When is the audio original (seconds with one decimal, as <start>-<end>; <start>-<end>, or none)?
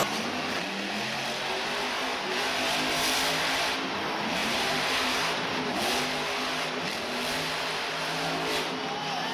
0.0-4.4; 5.5-9.3